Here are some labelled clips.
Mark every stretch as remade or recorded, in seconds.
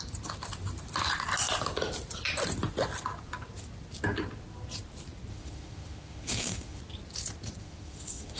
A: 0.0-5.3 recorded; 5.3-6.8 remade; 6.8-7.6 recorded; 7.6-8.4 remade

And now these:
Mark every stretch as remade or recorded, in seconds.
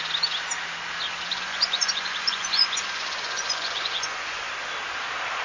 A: 0.0-1.3 recorded; 1.3-4.5 remade; 4.5-5.4 recorded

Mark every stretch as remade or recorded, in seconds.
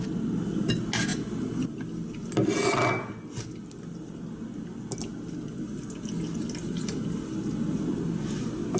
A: 0.0-8.8 recorded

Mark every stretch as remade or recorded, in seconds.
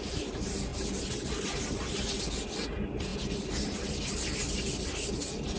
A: 0.0-5.6 recorded